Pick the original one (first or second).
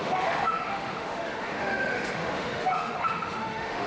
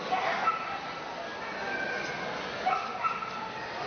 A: second